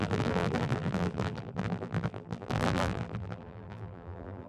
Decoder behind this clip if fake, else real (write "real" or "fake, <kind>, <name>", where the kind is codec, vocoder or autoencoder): fake, vocoder, BigVGAN v2